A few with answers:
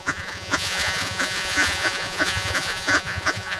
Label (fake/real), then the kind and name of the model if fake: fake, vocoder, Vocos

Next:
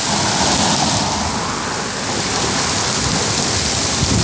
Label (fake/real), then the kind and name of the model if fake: real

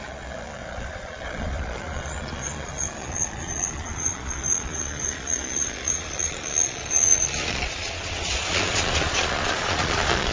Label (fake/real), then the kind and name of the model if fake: fake, vocoder, Vocos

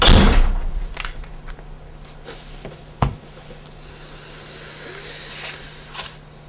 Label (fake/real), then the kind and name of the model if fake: real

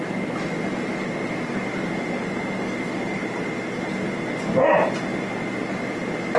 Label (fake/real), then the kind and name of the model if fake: real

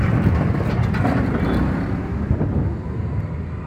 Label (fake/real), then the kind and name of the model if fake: real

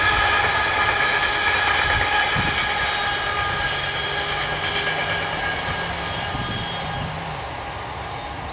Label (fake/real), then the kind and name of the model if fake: real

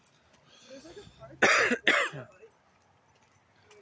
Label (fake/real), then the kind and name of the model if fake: real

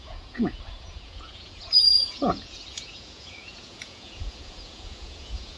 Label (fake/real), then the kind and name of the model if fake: fake, vocoder, Vocos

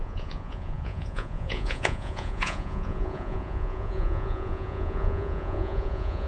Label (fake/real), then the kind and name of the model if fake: fake, vocoder, Vocos